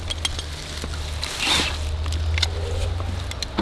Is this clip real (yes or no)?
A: yes